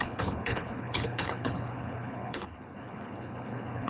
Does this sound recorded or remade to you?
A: remade